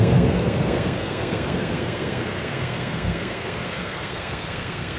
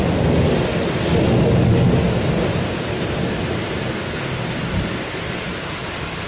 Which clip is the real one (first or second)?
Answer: second